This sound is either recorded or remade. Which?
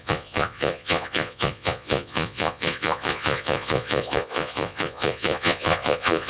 remade